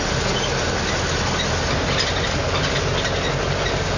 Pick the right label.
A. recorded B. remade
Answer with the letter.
A